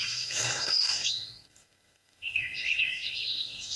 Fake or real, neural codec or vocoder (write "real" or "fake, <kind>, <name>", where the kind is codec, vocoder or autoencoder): fake, codec, SNAC